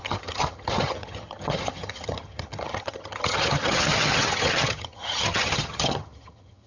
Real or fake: fake